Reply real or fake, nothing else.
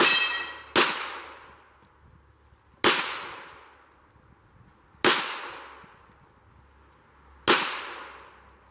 real